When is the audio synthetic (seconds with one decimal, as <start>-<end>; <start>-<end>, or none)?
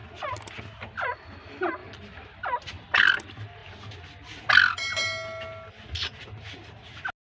none